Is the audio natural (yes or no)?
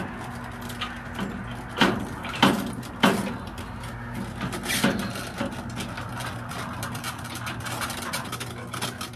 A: yes